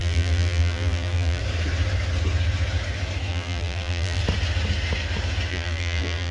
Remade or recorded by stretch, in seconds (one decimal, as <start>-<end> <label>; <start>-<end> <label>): 0.0-1.4 remade; 1.4-3.3 recorded; 3.3-4.2 remade; 4.2-5.5 recorded; 5.5-6.3 remade